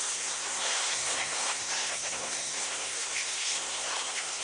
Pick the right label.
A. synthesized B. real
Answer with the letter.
A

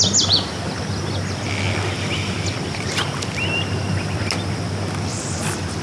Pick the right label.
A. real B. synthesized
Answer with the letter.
A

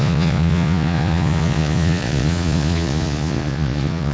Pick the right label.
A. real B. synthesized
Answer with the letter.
B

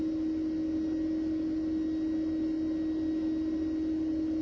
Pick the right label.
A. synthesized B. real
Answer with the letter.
B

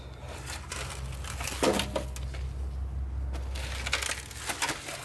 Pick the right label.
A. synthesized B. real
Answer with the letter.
B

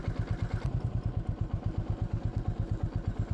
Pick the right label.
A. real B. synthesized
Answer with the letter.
A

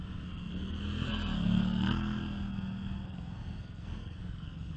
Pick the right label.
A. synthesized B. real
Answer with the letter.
A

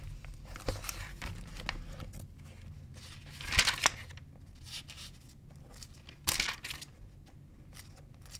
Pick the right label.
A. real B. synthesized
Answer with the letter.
A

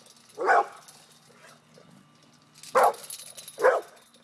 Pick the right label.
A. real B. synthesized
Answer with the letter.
A